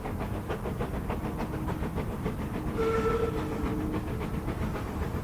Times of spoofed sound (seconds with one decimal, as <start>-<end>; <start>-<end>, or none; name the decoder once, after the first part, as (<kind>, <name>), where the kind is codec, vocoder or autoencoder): none